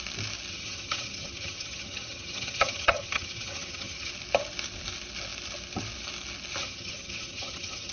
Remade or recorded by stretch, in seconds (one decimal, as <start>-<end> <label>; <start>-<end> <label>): 0.0-0.5 recorded; 0.5-4.1 remade; 4.1-6.6 recorded; 6.6-7.9 remade